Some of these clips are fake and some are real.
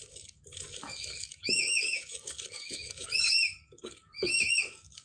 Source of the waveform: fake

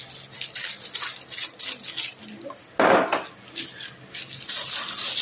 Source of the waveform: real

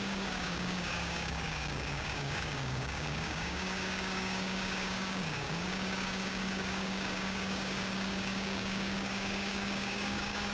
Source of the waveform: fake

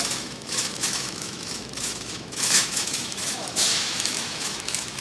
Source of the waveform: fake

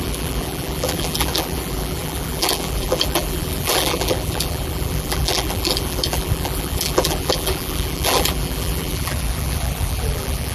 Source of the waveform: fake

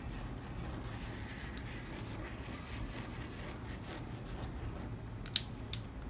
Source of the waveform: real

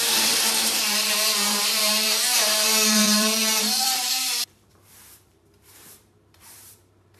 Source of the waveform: fake